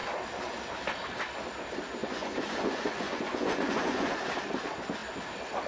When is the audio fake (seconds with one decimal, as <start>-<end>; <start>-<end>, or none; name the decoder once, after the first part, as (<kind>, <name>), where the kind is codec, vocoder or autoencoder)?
2.0-4.1 (vocoder, Vocos)